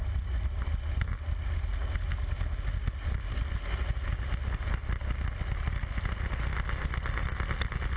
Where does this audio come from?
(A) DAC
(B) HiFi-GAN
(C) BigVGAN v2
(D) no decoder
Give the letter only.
D